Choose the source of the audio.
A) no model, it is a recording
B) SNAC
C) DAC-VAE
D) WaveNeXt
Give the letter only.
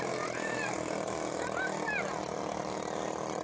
A